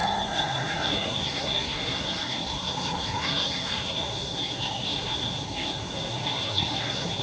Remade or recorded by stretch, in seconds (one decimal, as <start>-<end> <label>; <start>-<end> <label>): 0.0-7.2 remade